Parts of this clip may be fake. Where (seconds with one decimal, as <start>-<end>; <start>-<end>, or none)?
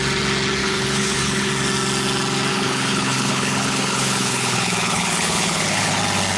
0.6-1.5; 2.5-6.0